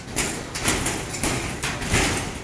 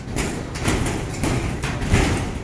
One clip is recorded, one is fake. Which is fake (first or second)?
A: second